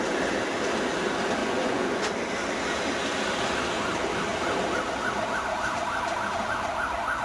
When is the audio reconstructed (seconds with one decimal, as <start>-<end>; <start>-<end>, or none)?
1.4-2.0